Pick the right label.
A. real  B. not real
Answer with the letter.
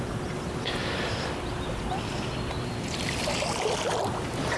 A